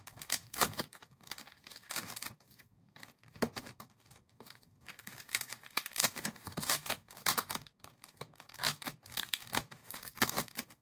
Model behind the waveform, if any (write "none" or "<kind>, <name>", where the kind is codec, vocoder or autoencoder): codec, DAC